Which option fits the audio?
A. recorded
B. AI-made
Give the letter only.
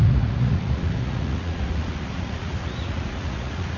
B